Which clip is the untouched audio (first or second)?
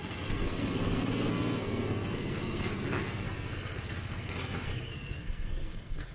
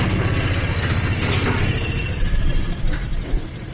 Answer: second